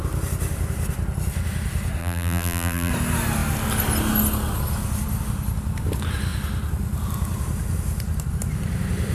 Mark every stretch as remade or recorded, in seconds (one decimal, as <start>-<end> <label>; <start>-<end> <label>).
0.0-2.0 recorded; 2.0-2.9 remade; 2.9-9.1 recorded